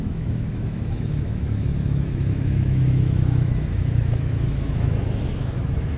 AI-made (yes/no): yes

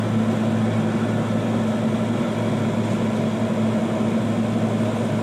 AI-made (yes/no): no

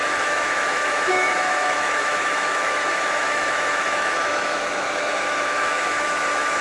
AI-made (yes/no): yes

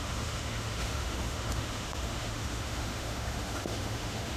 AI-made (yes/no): yes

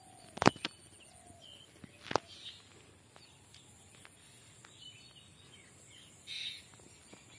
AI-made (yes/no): no